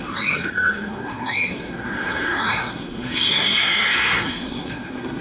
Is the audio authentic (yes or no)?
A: no